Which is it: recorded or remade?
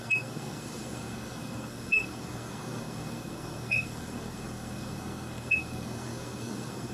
remade